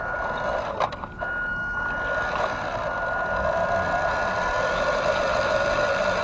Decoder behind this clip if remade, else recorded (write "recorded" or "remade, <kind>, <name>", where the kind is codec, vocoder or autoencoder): recorded